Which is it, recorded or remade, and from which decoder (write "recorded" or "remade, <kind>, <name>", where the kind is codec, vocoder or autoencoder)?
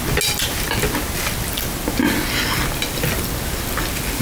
recorded